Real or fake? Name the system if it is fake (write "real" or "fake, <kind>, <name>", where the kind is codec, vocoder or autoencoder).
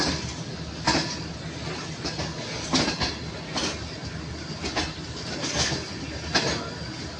real